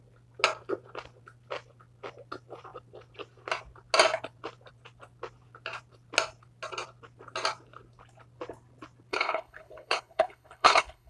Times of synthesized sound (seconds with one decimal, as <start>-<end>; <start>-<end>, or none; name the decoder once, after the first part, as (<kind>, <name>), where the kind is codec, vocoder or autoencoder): 9.1-11.1 (codec, HILCodec)